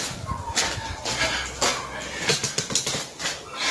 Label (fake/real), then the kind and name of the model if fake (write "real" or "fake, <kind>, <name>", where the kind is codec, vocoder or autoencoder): real